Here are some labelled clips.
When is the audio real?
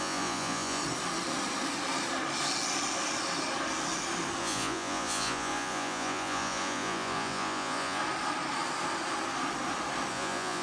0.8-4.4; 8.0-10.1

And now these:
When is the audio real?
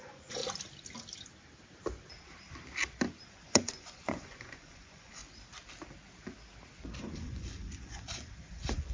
0.4-3.3; 5.2-7.0